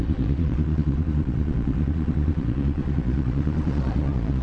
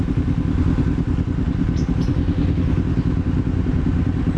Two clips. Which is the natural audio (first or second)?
second